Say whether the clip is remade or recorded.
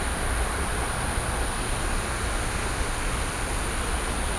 recorded